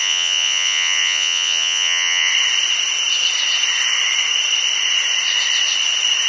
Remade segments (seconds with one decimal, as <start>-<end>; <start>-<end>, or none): 0.0-2.3